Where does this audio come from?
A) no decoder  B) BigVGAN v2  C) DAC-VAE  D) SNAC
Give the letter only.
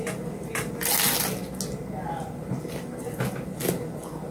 A